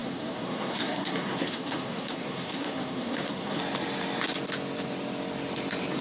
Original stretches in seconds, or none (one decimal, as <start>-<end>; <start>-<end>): 3.6-6.0